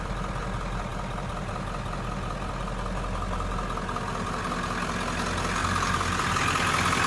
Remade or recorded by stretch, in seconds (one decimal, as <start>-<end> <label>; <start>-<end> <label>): 0.0-5.6 recorded; 5.6-6.3 remade; 6.3-7.1 recorded